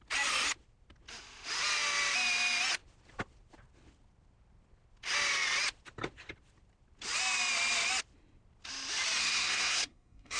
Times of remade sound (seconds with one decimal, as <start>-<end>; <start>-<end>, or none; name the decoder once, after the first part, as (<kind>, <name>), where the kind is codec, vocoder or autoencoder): 9.2-10.4 (codec, SNAC)